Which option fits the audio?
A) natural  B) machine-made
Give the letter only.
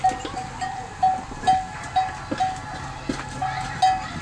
A